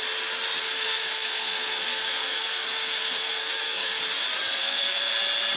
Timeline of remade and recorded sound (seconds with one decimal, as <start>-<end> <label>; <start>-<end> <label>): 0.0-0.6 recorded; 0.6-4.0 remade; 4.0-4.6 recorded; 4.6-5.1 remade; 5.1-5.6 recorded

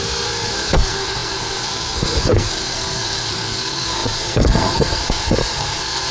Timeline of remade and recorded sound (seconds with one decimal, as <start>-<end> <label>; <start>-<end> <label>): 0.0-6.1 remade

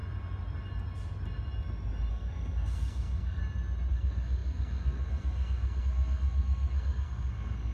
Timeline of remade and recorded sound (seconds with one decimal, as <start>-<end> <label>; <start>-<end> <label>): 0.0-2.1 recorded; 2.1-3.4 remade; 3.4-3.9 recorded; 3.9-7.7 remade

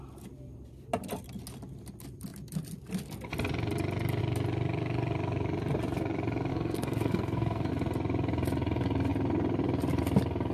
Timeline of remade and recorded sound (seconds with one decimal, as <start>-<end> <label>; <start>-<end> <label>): 0.0-6.5 recorded; 6.5-7.7 remade; 7.7-10.5 recorded

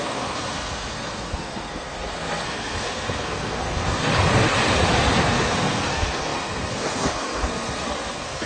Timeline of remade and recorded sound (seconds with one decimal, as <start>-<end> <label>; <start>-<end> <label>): 0.0-4.1 remade; 4.1-5.2 recorded; 5.2-8.5 remade

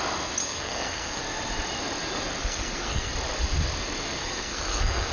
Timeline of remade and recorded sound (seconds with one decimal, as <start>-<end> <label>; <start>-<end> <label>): 0.0-0.4 recorded; 0.4-1.2 remade; 1.2-2.4 recorded; 2.4-3.1 remade; 3.1-4.2 recorded; 4.2-5.1 remade

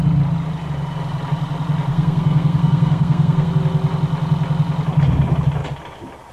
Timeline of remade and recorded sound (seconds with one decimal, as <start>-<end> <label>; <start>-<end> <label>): 0.0-1.9 recorded; 1.9-3.5 remade; 3.5-6.3 recorded